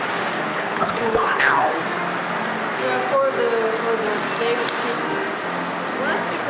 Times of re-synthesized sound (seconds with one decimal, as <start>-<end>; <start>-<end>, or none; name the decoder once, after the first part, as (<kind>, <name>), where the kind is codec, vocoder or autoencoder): 0.5-1.8 (codec, HILCodec)

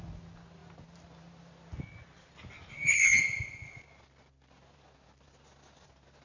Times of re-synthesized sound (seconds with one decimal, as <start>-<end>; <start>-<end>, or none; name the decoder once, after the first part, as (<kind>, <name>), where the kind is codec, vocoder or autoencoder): 2.7-3.2 (vocoder, HiFi-GAN)